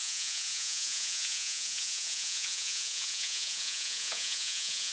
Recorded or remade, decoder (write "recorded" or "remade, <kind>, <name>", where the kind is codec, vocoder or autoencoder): remade, vocoder, Vocos